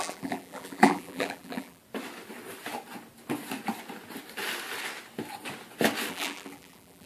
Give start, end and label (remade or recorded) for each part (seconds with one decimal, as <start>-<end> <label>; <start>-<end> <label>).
0.0-1.8 remade; 1.8-6.1 recorded; 6.1-7.1 remade